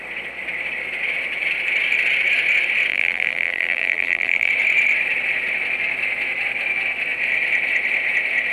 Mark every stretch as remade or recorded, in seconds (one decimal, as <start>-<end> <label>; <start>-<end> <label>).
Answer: 0.0-2.9 recorded; 2.9-4.5 remade; 4.5-8.5 recorded